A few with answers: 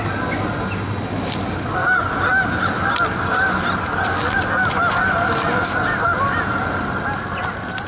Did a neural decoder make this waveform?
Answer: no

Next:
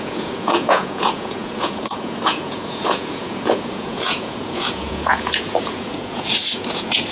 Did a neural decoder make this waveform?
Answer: yes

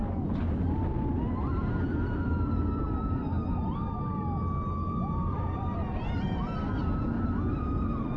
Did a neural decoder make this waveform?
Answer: no